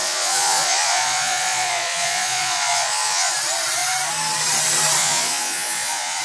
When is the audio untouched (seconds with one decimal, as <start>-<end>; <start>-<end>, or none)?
3.3-5.0